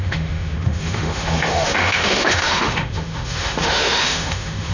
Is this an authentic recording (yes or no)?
no